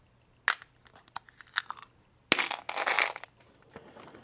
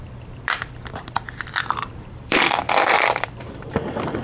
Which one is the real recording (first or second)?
first